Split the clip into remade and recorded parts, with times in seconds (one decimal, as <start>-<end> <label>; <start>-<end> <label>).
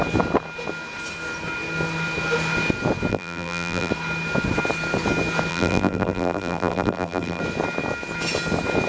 0.0-3.1 recorded; 3.1-3.9 remade; 3.9-5.5 recorded; 5.5-7.4 remade; 7.4-8.9 recorded